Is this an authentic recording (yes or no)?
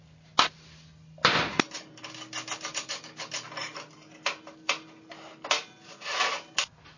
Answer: yes